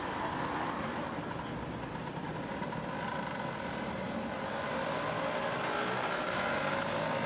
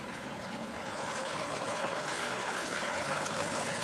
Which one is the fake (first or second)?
second